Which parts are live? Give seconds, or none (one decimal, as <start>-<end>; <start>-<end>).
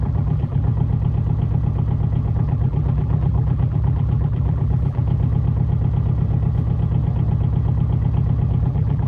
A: 0.7-2.3; 5.0-8.6